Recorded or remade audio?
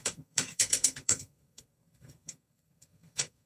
remade